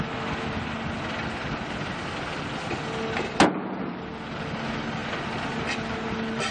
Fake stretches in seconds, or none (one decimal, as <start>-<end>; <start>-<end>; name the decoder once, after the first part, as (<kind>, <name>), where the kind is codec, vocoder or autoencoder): none